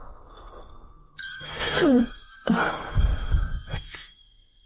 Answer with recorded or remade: remade